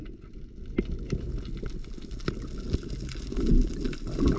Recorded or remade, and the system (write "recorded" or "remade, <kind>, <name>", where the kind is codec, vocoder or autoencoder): recorded